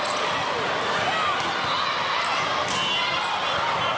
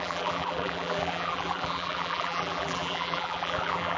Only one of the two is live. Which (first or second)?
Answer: first